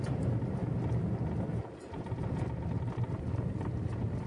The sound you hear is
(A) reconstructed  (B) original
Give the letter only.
B